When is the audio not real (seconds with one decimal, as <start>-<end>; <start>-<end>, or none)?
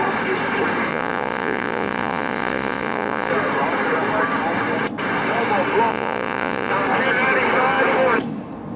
0.9-3.3; 5.9-6.7